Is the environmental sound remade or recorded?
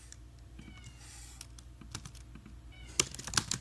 recorded